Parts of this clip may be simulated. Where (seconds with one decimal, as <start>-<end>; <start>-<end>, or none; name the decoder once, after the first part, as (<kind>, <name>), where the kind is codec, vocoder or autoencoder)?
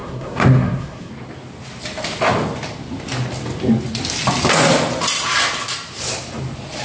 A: 0.0-1.1 (codec, SNAC)